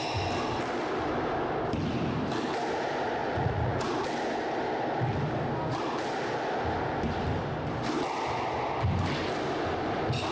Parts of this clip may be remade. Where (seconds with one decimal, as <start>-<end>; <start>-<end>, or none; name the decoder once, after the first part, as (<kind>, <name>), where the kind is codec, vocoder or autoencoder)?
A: 3.2-3.9 (vocoder, Vocos)